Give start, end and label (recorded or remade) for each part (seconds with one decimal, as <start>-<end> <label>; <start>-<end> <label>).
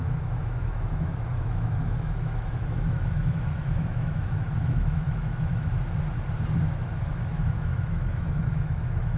0.0-5.7 remade; 5.7-7.1 recorded; 7.1-9.2 remade